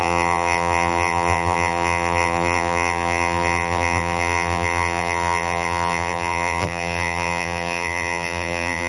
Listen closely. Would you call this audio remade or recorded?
remade